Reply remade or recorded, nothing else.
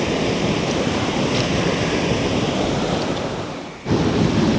recorded